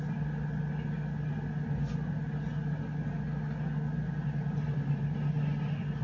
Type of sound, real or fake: real